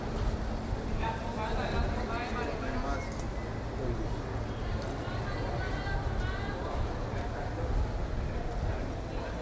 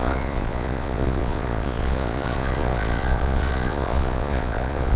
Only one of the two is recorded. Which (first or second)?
first